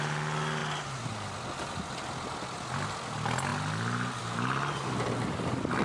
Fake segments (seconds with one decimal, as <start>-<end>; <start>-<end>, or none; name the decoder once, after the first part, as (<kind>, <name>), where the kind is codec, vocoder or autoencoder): none